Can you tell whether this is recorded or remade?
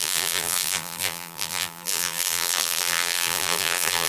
remade